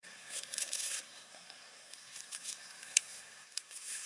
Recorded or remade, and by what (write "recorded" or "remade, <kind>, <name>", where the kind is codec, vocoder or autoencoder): remade, codec, SNAC